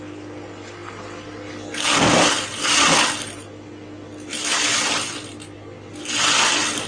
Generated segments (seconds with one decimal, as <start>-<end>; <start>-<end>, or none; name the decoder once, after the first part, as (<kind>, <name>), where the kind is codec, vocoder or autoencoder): 4.3-4.8 (autoencoder, DAC-VAE)